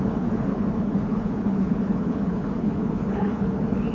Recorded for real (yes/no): no